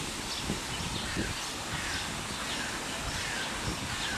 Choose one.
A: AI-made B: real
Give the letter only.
B